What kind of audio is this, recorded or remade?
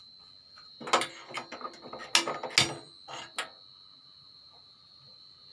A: recorded